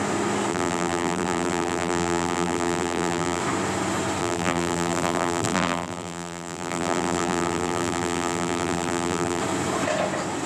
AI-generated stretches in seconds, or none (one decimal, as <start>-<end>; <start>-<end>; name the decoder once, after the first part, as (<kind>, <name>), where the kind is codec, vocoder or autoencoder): 0.5-3.4 (vocoder, BigVGAN v2); 4.2-9.4